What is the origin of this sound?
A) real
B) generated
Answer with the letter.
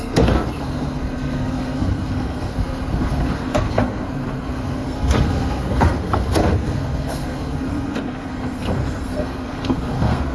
B